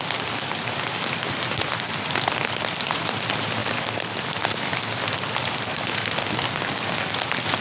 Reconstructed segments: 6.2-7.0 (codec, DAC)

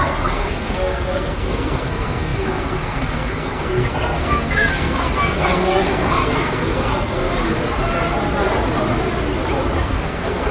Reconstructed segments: 0.0-7.2 (codec, SNAC); 9.8-10.5

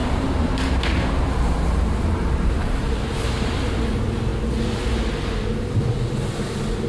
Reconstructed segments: 0.0-3.2 (vocoder, BigVGAN v2)

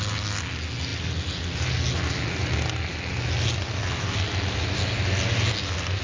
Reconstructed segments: none

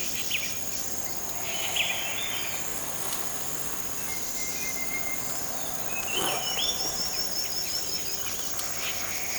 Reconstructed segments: 0.0-0.6 (vocoder, BigVGAN v2)

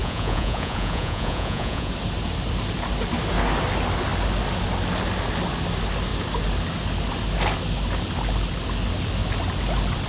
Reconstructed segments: 0.0-1.9 (vocoder, Vocos)

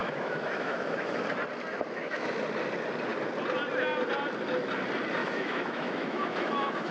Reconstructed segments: 0.0-1.2 (autoencoder, DAC-VAE); 1.7-2.3; 5.2-6.9